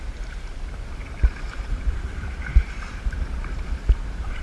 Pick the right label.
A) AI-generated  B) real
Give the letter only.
A